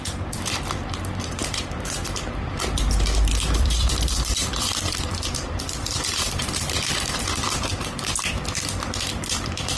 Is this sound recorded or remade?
remade